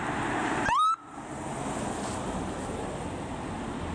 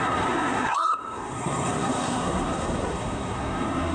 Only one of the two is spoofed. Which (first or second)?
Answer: second